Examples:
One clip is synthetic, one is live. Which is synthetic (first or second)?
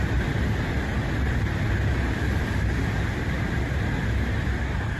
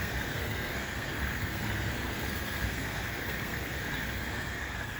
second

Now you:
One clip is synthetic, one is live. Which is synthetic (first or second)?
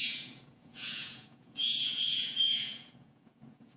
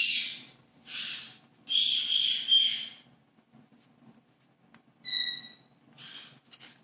first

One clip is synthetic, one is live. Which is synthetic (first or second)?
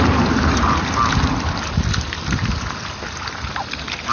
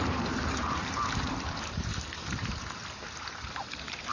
second